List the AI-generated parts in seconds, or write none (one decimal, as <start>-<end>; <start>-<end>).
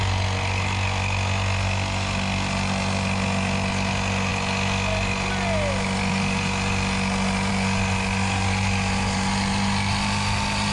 none